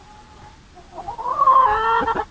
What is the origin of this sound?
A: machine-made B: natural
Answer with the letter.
B